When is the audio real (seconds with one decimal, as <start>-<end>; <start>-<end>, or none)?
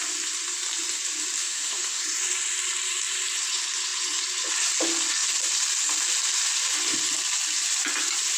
0.0-1.4; 2.0-8.4